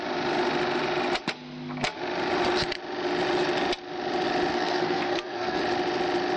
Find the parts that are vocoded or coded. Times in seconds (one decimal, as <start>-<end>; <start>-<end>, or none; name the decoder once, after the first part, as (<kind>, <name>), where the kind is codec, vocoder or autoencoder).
4.5-5.6 (codec, SNAC)

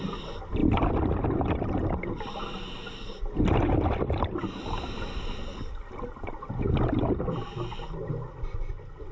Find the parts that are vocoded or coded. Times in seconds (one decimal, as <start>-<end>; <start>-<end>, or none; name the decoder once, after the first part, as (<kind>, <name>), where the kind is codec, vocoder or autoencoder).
none

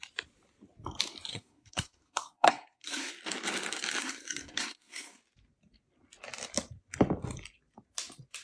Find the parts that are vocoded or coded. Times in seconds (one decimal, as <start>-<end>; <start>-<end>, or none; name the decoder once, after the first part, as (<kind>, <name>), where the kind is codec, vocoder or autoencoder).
1.3-3.1 (codec, SNAC); 4.0-5.2

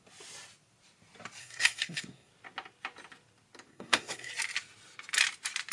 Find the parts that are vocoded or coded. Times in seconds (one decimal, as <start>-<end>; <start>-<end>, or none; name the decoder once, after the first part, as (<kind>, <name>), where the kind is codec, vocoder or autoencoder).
1.4-2.3 (codec, SNAC); 3.7-4.3

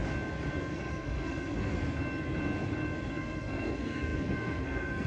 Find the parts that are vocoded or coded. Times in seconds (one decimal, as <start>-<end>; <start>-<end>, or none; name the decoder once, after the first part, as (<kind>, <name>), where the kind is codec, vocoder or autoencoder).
0.6-1.8 (codec, SNAC); 3.1-5.1